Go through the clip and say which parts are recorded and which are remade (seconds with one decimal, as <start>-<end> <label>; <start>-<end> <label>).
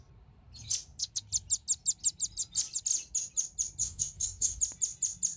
0.0-3.8 recorded; 3.8-4.6 remade; 4.6-5.4 recorded